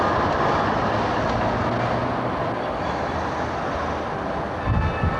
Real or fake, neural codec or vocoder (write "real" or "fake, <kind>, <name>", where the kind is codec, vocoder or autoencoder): real